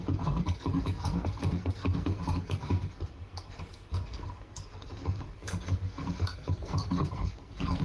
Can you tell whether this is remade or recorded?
remade